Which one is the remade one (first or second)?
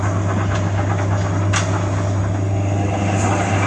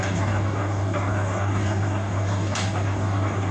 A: second